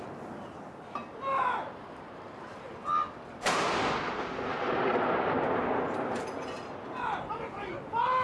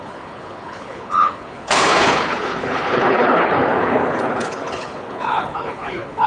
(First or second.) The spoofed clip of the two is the second